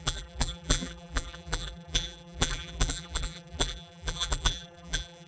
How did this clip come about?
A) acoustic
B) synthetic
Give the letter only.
B